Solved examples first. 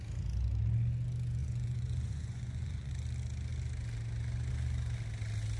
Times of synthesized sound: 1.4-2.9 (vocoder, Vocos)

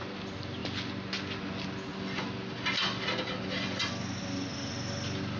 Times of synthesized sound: none